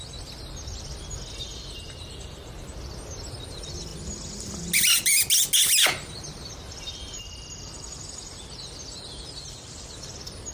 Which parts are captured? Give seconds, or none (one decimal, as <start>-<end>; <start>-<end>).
0.0-10.5